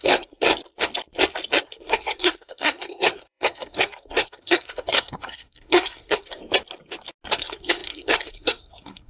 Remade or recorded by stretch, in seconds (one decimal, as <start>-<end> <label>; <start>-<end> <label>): 0.0-0.5 remade; 0.5-1.6 recorded; 1.6-6.4 remade; 6.4-7.3 recorded; 7.3-9.1 remade